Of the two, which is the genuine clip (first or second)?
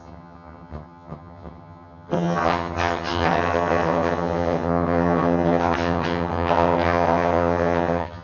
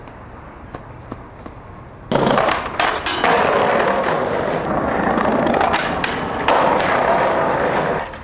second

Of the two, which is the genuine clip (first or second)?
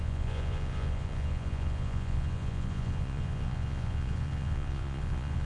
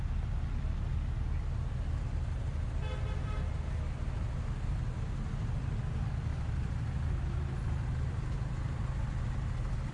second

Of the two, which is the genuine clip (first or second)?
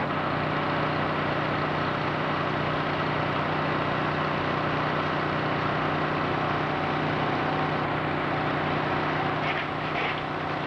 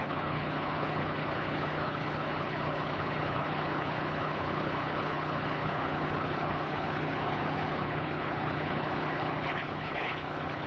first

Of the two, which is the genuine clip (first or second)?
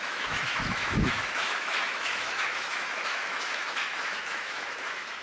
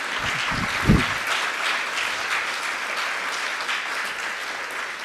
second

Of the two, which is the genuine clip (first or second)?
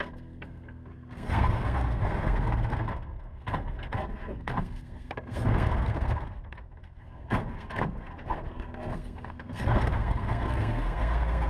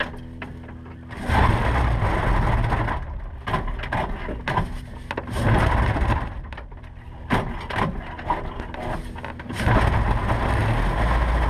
second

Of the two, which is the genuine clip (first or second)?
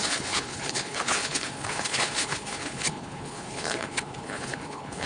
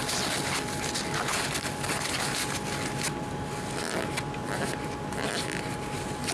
second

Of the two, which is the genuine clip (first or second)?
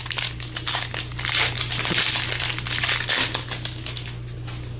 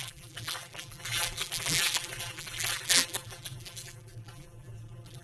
first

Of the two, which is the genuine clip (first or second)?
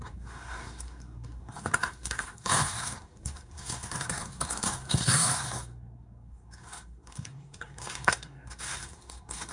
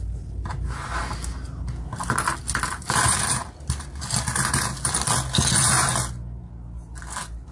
second